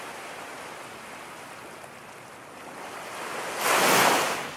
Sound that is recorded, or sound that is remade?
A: recorded